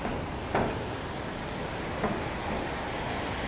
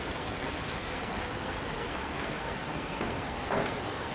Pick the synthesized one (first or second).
second